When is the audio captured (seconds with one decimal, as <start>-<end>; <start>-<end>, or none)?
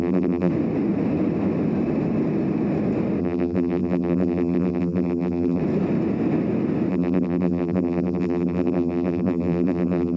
0.5-3.2; 5.6-6.9